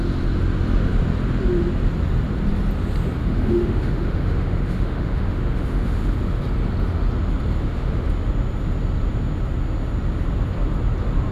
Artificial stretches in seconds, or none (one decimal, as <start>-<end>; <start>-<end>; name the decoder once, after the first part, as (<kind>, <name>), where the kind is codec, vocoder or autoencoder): 3.2-6.4 (autoencoder, DAC-VAE); 7.6-8.1